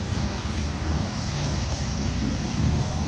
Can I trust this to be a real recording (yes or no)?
no